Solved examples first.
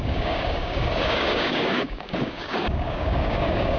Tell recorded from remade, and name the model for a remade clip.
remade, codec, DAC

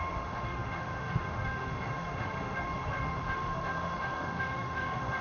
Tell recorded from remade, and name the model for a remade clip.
remade, autoencoder, DAC-VAE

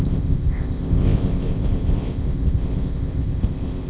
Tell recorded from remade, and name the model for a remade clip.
remade, codec, ZipCodec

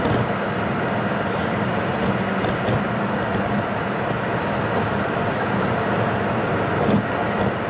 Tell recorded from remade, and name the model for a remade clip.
recorded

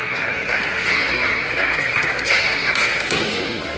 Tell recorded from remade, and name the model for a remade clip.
remade, codec, SNAC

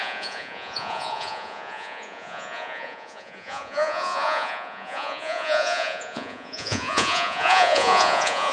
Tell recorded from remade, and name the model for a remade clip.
remade, vocoder, Vocos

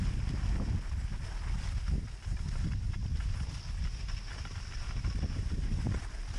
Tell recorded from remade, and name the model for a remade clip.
recorded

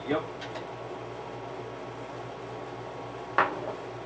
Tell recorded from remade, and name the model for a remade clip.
recorded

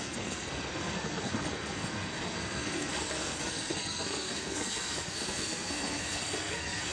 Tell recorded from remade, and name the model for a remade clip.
remade, codec, SNAC